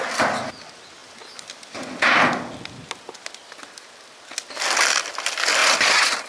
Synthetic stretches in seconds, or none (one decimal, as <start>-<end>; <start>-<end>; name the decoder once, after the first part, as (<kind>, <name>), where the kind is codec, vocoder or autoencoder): 5.6-6.3 (vocoder, BigVGAN v2)